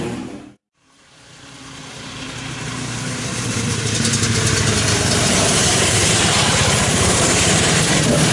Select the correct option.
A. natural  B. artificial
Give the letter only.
B